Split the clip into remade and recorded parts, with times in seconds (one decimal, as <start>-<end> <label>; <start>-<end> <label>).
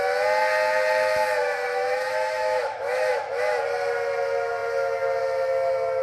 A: 0.0-1.4 recorded; 1.4-3.6 remade; 3.6-6.0 recorded